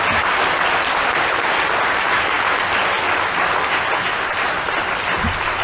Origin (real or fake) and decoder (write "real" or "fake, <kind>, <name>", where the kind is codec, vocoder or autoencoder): real